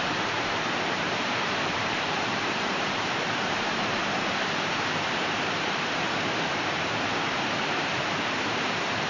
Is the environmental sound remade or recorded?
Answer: remade